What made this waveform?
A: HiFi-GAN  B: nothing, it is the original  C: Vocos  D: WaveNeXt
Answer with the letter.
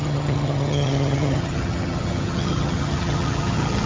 A